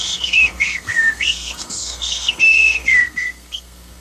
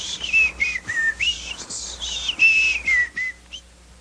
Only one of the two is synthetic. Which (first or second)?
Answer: first